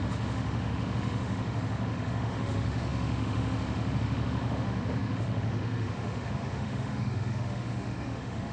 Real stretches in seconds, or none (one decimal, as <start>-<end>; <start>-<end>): none